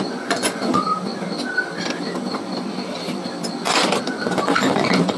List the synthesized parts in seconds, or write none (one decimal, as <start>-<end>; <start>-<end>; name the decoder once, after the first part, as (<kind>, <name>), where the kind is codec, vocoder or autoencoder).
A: 0.0-0.9 (vocoder, Vocos); 4.0-5.2